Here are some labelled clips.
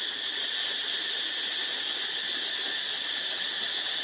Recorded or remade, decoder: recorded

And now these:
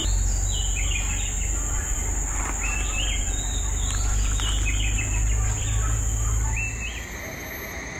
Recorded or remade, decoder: recorded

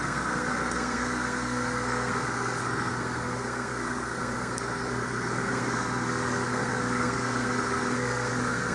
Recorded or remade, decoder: remade, codec, SNAC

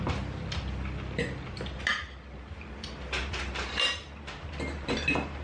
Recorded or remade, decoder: recorded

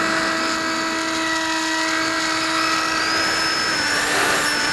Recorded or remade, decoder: recorded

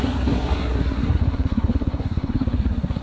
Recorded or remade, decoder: remade, codec, SNAC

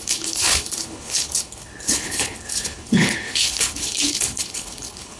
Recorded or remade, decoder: remade, codec, HILCodec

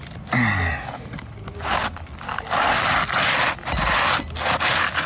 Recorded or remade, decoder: recorded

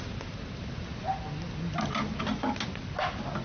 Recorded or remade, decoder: recorded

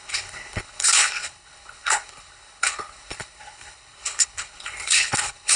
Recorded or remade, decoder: remade, codec, HILCodec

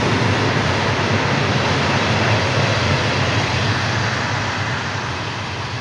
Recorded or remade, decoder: recorded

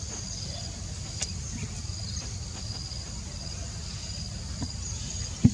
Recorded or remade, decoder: recorded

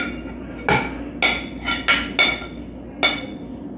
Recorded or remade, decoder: recorded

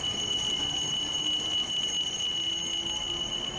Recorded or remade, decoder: recorded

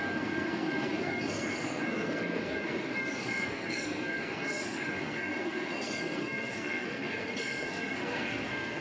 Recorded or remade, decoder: remade, codec, SNAC